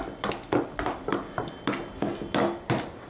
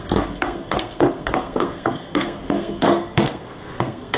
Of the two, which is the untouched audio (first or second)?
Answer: first